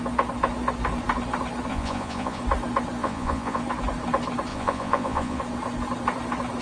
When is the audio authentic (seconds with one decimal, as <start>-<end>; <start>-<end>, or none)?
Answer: 0.0-1.7; 2.4-3.0; 3.6-4.5; 5.4-6.6